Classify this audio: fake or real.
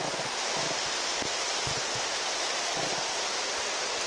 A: real